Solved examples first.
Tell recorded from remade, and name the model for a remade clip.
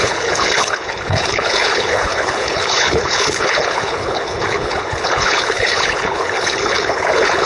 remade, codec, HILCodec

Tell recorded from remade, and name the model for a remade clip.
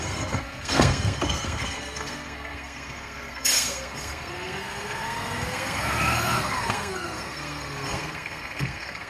remade, codec, SNAC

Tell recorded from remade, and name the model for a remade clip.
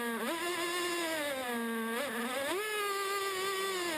recorded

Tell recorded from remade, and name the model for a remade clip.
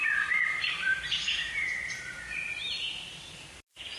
remade, vocoder, BigVGAN v2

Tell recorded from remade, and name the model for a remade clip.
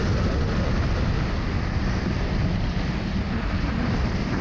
recorded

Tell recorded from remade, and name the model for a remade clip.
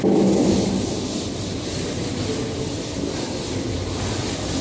recorded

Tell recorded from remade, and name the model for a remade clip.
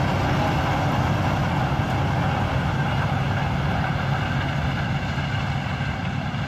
recorded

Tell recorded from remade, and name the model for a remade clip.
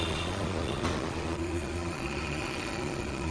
remade, vocoder, Vocos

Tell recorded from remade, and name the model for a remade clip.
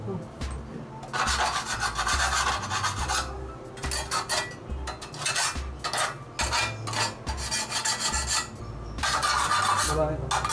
recorded